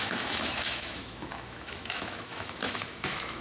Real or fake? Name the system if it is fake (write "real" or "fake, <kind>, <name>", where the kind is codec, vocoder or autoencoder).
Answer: fake, autoencoder, DAC-VAE